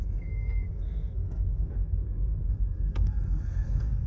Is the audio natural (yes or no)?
no